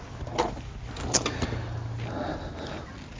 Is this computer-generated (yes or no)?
no